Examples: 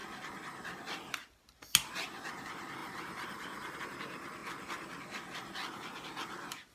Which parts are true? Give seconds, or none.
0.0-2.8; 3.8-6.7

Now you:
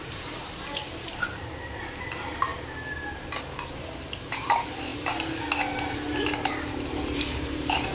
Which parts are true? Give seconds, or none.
2.5-4.1; 4.9-5.9

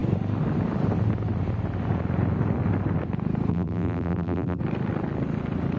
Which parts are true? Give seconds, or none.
0.0-3.5; 4.6-5.8

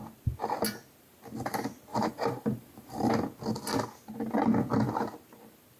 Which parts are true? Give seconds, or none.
0.0-1.9; 3.1-5.8

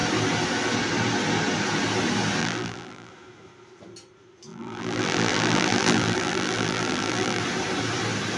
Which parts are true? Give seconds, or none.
0.0-2.4; 3.1-4.5; 7.4-8.4

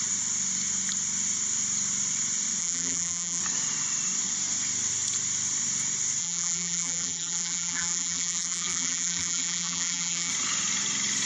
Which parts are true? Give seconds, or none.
0.0-2.6; 3.4-6.2; 10.3-11.3

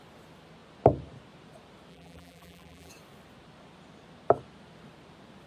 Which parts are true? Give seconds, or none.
0.0-1.9; 2.9-5.5

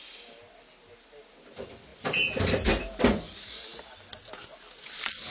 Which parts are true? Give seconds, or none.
0.0-5.3